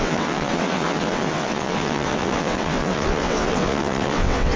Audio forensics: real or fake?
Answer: fake